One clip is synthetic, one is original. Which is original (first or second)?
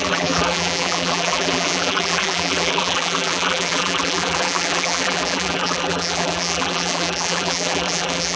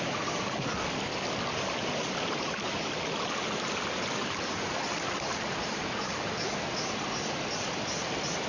second